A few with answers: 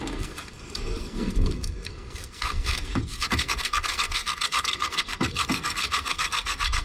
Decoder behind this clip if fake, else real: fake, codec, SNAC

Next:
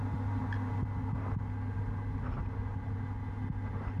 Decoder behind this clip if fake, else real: real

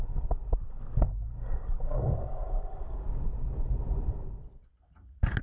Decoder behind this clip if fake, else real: real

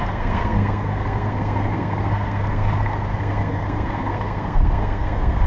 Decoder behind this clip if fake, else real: fake, codec, SNAC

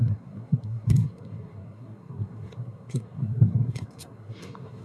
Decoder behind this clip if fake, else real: fake, codec, SNAC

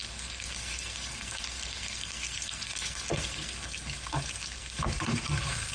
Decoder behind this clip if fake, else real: fake, codec, SNAC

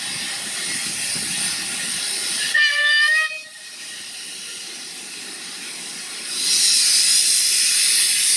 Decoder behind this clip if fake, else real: real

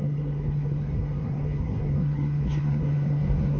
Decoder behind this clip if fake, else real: fake, codec, SNAC